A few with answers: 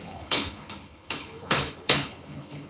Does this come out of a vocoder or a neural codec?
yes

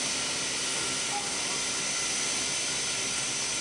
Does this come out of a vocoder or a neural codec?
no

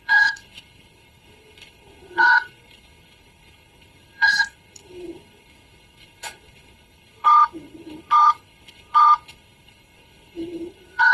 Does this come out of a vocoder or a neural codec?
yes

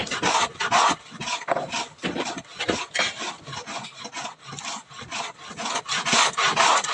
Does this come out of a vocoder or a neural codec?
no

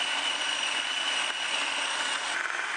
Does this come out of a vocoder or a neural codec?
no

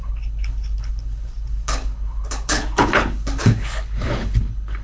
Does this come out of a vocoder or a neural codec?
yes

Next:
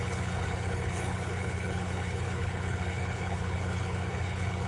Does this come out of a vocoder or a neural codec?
yes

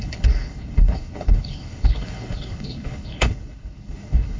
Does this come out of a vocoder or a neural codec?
yes